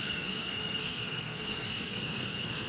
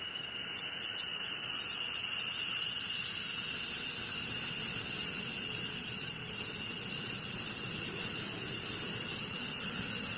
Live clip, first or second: second